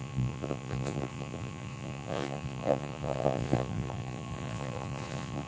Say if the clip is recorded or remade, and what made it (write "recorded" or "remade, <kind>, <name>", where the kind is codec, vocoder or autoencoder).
remade, vocoder, Vocos